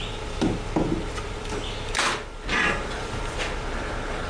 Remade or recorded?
remade